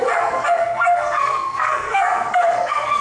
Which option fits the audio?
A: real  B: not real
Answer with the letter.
B